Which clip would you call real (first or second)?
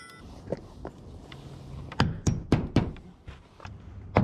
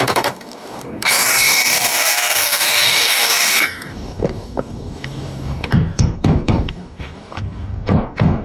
first